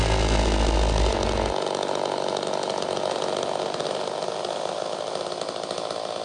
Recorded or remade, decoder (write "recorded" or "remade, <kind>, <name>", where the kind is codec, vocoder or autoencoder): recorded